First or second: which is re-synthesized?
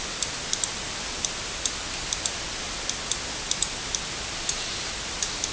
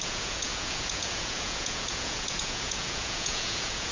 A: second